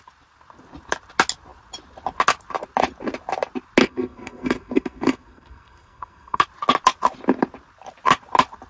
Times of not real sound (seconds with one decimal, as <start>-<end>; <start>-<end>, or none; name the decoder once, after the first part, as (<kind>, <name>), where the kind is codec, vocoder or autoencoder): 3.8-6.4 (codec, SNAC)